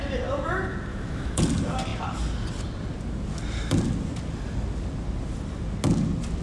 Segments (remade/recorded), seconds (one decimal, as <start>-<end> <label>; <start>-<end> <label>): 0.0-0.9 recorded; 0.9-1.4 remade; 1.4-6.4 recorded